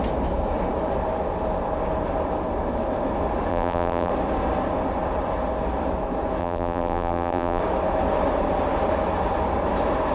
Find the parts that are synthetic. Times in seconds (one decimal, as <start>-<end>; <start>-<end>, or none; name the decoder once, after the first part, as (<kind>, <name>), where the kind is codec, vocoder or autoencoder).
3.5-4.1 (vocoder, BigVGAN v2); 6.4-7.6